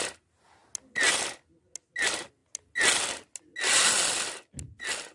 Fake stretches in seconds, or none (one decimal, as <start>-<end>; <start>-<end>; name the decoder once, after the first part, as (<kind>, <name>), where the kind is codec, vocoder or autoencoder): none